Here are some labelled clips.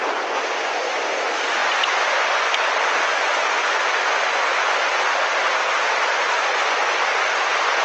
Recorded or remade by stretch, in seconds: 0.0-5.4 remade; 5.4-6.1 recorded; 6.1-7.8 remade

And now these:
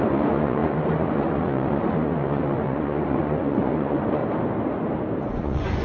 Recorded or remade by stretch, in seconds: 0.0-4.2 remade; 4.2-5.2 recorded; 5.2-5.8 remade

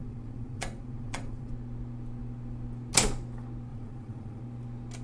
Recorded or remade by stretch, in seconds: 0.0-1.5 remade; 1.5-3.7 recorded; 3.7-4.4 remade; 4.4-5.0 recorded

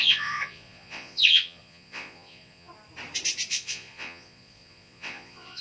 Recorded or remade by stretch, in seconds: 0.0-2.7 remade; 2.7-3.5 recorded; 3.5-5.6 remade

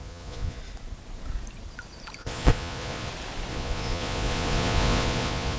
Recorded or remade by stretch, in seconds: 0.0-0.6 remade; 0.6-2.2 recorded; 2.2-3.1 remade; 3.1-3.5 recorded; 3.5-5.6 remade

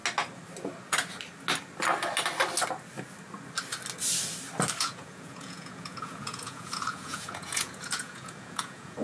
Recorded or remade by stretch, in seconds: 0.0-4.8 recorded; 4.8-9.0 remade